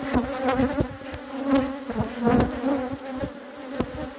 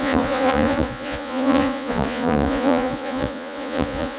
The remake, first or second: second